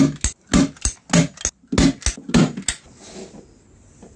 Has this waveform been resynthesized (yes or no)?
no